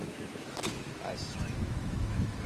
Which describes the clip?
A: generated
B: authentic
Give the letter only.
A